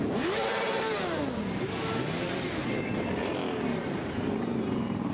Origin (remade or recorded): remade